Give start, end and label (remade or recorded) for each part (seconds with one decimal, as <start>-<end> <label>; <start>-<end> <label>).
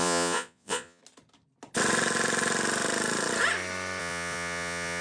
0.0-1.0 remade; 1.0-4.0 recorded; 4.0-5.0 remade